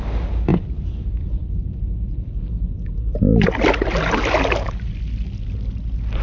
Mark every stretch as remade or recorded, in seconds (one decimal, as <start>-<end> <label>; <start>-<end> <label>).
0.0-0.5 recorded; 0.5-1.6 remade; 1.6-6.2 recorded